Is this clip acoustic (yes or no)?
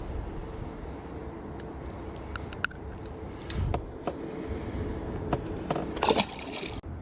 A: yes